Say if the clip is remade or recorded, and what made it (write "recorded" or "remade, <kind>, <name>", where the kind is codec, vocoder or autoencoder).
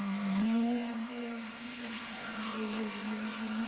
remade, codec, ZipCodec